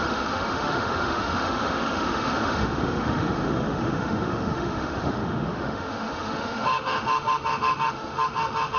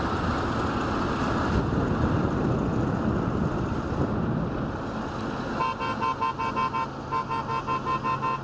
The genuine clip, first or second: second